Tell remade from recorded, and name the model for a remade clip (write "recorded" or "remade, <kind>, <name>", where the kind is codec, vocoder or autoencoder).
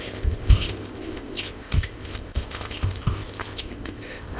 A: remade, codec, ZipCodec